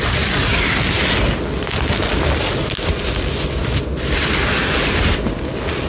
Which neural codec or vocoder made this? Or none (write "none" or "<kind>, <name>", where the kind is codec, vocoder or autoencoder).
none